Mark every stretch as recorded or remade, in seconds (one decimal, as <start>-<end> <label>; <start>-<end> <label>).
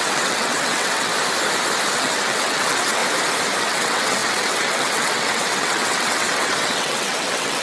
0.0-1.1 remade; 1.1-1.9 recorded; 1.9-3.0 remade; 3.0-3.6 recorded; 3.6-7.6 remade